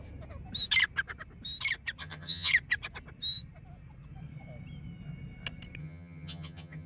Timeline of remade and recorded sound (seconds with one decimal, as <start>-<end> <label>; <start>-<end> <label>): 0.0-2.0 recorded; 2.0-2.5 remade; 2.5-5.8 recorded; 5.8-6.9 remade